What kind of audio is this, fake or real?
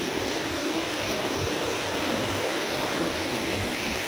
fake